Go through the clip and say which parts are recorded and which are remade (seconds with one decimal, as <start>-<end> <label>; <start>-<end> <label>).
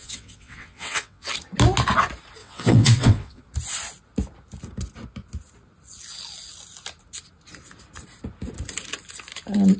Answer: 0.0-1.3 remade; 1.3-2.4 recorded; 2.4-3.4 remade; 3.4-9.8 recorded